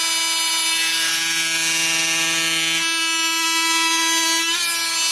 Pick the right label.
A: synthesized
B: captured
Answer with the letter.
B